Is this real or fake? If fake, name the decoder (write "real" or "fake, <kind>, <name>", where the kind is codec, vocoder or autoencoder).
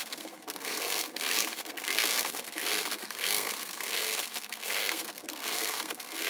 fake, codec, SNAC